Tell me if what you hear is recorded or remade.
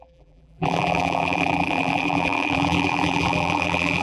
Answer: remade